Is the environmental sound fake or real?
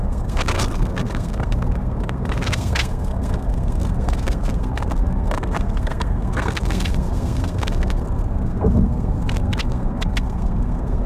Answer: fake